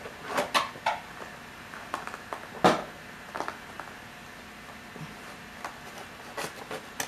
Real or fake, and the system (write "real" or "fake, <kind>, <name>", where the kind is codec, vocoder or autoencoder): real